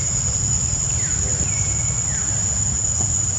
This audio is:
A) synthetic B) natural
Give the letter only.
B